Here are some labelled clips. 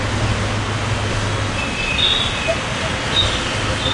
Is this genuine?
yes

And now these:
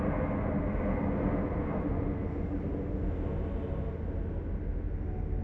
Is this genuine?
yes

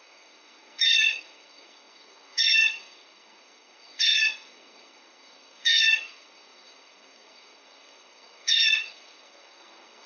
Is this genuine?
no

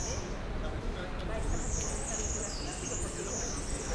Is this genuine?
yes